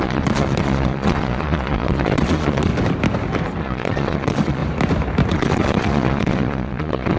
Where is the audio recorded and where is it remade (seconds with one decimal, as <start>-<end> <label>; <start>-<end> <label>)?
0.0-2.7 remade; 2.7-3.6 recorded; 3.6-4.6 remade; 4.6-5.3 recorded; 5.3-7.2 remade